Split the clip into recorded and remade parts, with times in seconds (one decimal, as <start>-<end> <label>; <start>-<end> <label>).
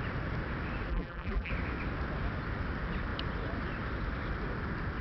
0.0-0.9 recorded; 0.9-1.5 remade; 1.5-5.0 recorded